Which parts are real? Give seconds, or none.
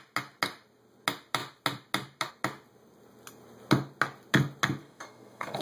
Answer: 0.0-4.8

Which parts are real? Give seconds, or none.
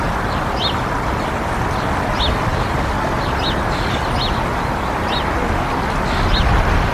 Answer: 0.0-6.9